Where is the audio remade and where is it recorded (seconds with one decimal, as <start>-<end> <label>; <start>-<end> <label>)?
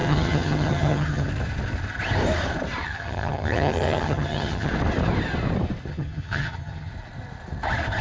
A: 0.0-1.3 remade; 1.3-2.8 recorded; 2.8-4.7 remade; 4.7-5.9 recorded; 5.9-6.9 remade; 6.9-8.0 recorded